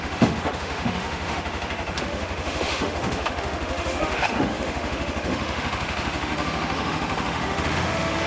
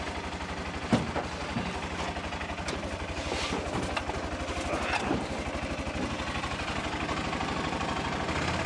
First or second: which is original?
second